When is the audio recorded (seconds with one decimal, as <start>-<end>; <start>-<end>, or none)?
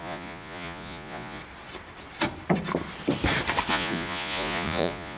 1.4-3.7